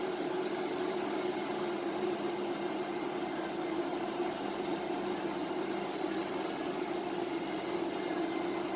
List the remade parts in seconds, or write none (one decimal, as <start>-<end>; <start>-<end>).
3.9-4.4